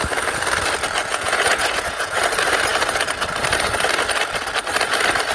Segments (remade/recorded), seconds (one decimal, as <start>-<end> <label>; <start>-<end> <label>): 0.0-1.0 recorded; 1.0-2.2 remade; 2.2-5.3 recorded